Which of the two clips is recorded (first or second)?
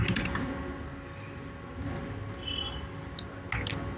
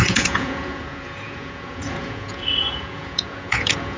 first